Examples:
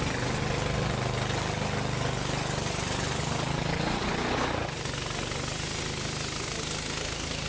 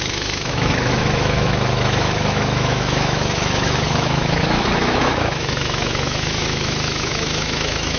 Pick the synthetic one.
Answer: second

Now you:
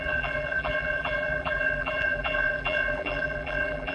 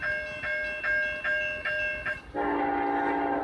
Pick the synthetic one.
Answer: first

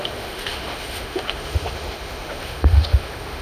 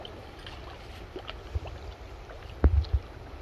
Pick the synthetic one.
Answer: first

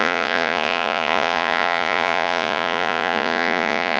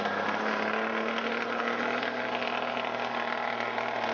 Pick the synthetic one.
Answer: first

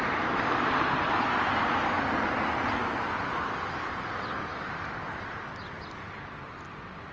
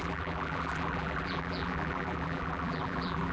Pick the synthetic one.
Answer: second